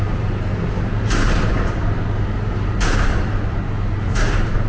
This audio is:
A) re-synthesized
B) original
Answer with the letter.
A